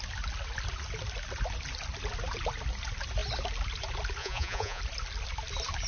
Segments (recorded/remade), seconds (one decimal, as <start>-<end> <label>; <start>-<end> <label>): 0.0-4.2 recorded; 4.2-4.8 remade; 4.8-5.9 recorded